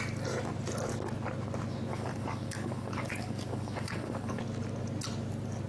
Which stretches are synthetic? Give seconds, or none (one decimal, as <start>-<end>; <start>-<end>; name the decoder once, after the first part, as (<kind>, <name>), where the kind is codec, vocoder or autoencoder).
1.9-4.4 (codec, DAC)